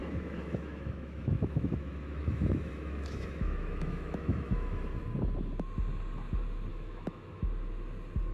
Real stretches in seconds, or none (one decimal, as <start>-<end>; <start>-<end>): 5.0-6.7; 7.4-8.3